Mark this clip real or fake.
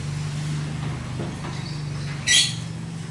real